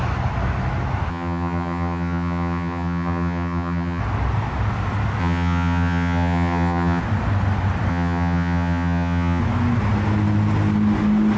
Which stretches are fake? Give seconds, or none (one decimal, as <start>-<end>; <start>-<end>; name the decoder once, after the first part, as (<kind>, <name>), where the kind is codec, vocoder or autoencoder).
1.1-4.0 (vocoder, HiFi-GAN); 5.2-7.0; 7.9-9.4